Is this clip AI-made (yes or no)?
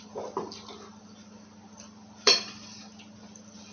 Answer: yes